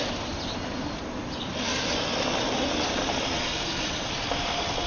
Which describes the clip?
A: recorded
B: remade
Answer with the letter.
A